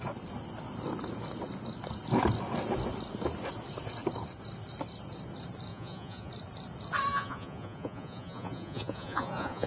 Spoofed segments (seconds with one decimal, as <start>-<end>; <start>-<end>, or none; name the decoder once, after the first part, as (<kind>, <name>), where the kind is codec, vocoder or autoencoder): 5.7-6.3 (vocoder, Vocos); 7.1-9.7